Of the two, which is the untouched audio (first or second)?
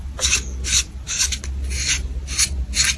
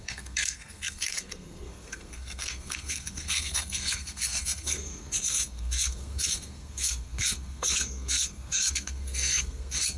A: first